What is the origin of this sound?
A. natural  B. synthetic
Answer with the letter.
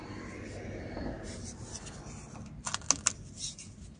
A